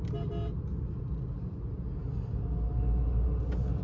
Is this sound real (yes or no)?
yes